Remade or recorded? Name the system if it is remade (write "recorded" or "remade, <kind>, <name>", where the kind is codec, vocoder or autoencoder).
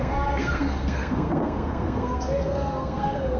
remade, codec, SNAC